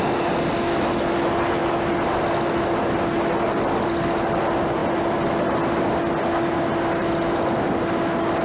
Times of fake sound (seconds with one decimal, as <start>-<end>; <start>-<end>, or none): none